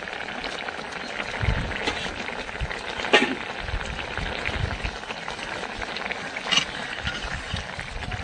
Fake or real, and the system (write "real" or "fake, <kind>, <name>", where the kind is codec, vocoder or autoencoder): real